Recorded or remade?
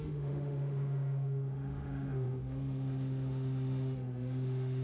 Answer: remade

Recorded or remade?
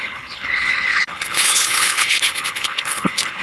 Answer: remade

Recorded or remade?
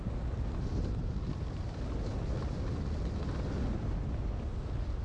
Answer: recorded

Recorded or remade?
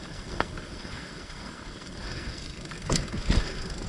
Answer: remade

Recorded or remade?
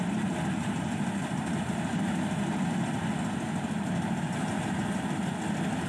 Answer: recorded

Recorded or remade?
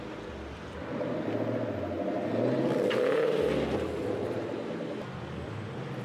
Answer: recorded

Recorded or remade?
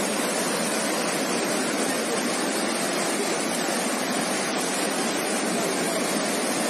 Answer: recorded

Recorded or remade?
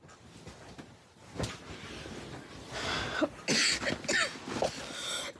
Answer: recorded